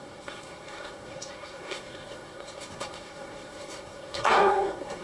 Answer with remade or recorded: remade